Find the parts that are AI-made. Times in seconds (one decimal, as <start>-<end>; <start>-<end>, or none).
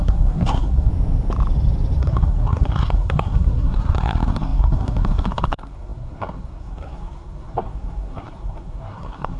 0.0-0.9; 2.0-9.4